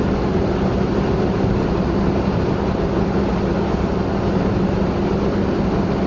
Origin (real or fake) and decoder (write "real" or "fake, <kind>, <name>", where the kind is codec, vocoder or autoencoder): real